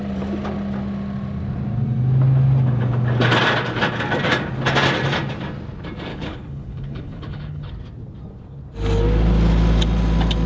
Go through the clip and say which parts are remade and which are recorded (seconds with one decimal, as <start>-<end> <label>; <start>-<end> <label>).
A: 0.0-6.1 recorded; 6.1-7.7 remade; 7.7-10.5 recorded